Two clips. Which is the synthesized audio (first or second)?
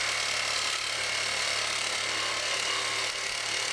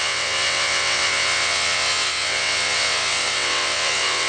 second